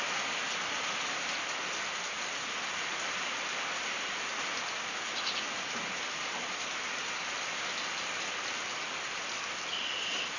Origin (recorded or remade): recorded